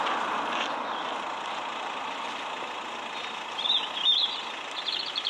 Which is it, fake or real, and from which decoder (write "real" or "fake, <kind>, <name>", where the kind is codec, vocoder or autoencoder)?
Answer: real